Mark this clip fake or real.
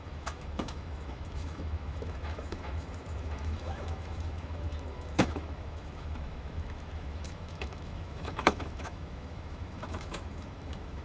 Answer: fake